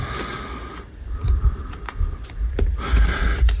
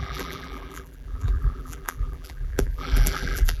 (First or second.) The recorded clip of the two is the first